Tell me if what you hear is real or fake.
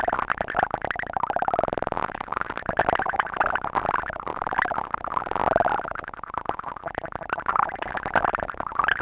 real